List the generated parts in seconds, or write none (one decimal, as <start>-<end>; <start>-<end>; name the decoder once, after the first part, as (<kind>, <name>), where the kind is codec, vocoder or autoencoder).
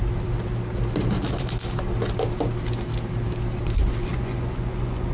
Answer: 4.1-5.1 (vocoder, Vocos)